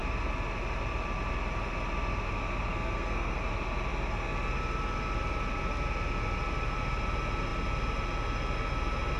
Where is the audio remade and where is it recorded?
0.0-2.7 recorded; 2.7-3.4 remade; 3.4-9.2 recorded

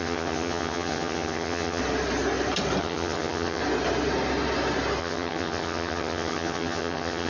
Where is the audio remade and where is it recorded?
0.0-1.8 remade; 1.8-2.8 recorded; 2.8-3.6 remade; 3.6-5.0 recorded; 5.0-7.3 remade

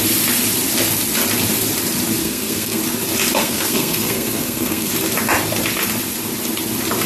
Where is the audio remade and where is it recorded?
0.0-2.2 recorded; 2.2-2.8 remade; 2.8-3.4 recorded; 3.4-4.9 remade; 4.9-7.1 recorded

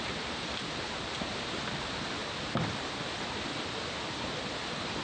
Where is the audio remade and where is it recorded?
0.0-2.2 remade; 2.2-5.0 recorded

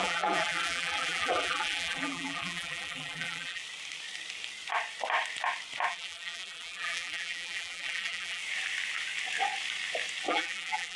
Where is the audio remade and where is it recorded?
0.0-3.6 remade; 3.6-5.9 recorded; 5.9-8.4 remade; 8.4-10.3 recorded; 10.3-11.0 remade

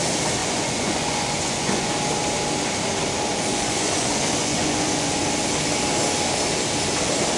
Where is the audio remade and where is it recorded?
0.0-0.4 recorded; 0.4-1.9 remade; 1.9-3.3 recorded; 3.3-5.2 remade; 5.2-7.4 recorded

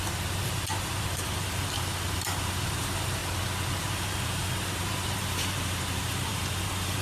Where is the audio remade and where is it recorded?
0.0-3.2 remade; 3.2-3.8 recorded; 3.8-7.0 remade

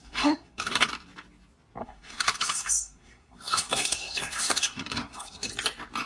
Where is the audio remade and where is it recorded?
0.0-0.9 remade; 0.9-1.8 recorded; 1.8-5.5 remade; 5.5-6.1 recorded